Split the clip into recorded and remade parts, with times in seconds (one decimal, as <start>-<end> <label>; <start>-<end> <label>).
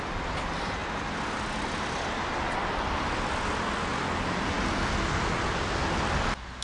0.0-6.6 recorded